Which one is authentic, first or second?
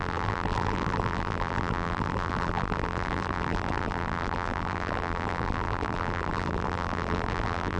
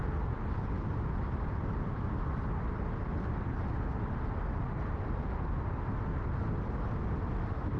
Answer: second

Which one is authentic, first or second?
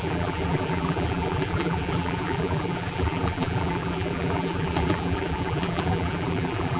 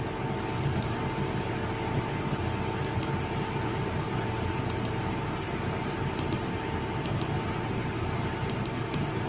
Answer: second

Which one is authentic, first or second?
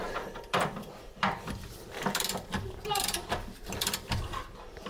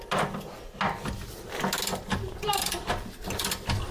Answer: second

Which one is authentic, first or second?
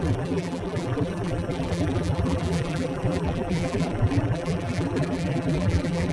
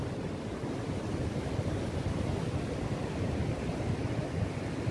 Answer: second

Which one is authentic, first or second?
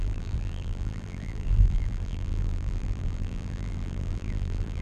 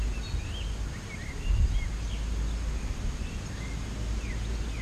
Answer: second